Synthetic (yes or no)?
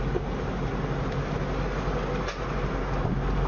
no